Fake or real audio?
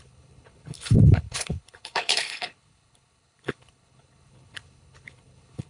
fake